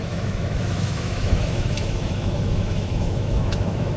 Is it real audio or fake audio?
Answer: fake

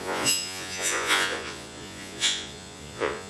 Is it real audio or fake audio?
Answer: fake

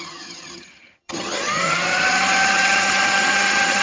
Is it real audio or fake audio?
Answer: fake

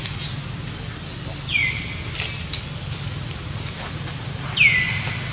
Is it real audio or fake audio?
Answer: real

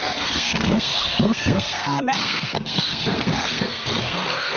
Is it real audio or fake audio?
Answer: fake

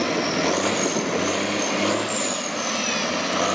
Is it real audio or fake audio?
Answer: real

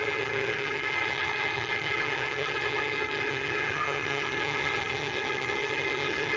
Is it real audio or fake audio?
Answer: fake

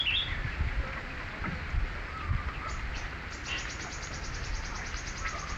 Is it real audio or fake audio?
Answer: real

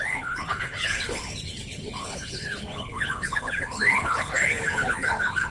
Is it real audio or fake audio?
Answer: fake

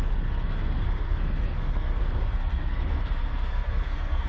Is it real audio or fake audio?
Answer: fake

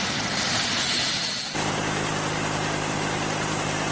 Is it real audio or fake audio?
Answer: real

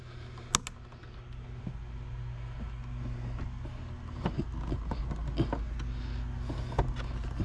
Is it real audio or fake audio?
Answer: real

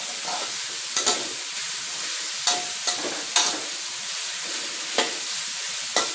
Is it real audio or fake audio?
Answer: real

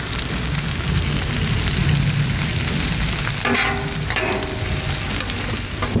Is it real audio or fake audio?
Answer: real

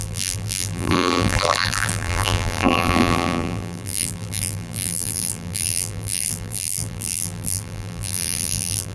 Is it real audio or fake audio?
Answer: fake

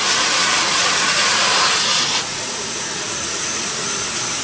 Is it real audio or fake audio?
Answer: fake